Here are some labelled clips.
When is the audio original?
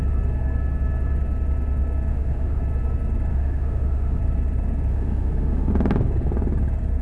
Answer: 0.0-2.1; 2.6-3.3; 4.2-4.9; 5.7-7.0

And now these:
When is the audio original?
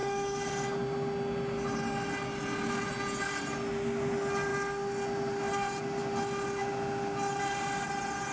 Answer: 0.5-8.3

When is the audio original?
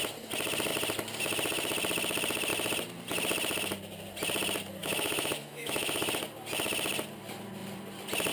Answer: 0.0-4.8; 6.1-8.3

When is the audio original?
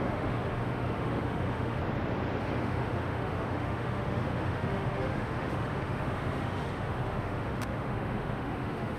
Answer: 1.8-2.4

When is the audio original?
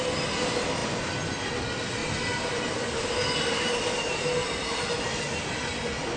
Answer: 0.0-6.2